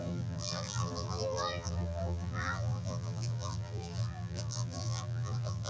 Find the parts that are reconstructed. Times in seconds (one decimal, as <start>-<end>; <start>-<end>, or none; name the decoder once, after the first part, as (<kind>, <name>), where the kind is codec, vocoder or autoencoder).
0.0-5.7 (vocoder, BigVGAN v2)